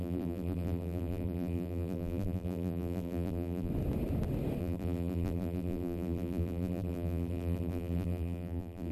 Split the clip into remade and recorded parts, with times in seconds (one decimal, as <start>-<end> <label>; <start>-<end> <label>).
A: 0.0-3.7 remade; 3.7-4.6 recorded; 4.6-8.9 remade